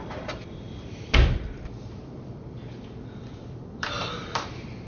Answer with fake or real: fake